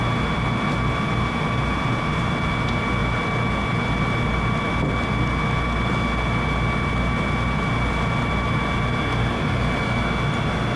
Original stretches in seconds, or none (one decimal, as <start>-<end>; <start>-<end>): 0.0-10.8